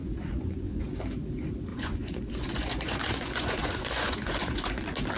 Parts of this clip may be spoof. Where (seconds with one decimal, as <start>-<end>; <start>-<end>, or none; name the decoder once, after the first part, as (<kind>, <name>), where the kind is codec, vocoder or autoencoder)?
0.0-0.8 (vocoder, Vocos); 1.7-4.8